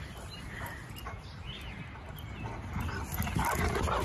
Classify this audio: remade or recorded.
recorded